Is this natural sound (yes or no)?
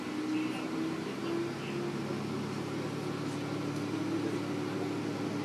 yes